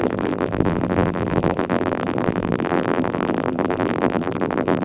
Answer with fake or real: fake